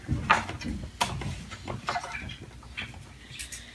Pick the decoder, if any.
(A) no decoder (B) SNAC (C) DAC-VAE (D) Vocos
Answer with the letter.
A